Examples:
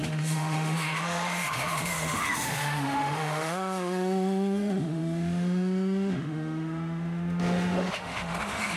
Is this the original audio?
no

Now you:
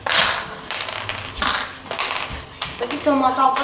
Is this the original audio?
yes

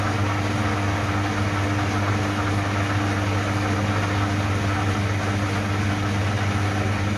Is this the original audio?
yes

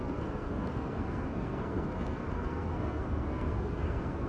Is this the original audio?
no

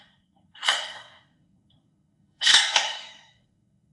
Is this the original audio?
no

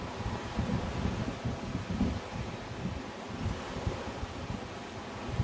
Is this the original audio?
yes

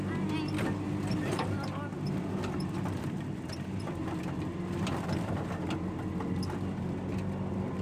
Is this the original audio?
yes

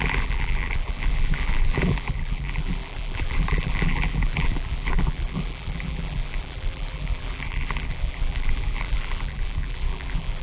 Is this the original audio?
no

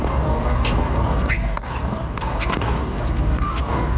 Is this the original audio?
no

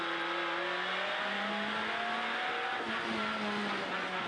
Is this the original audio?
yes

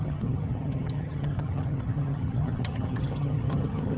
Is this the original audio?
no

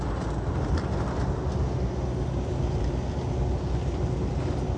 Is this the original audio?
yes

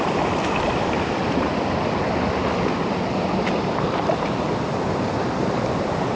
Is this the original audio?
yes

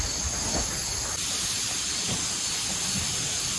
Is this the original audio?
yes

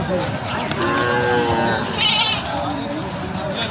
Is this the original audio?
yes